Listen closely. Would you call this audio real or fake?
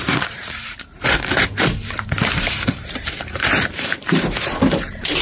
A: fake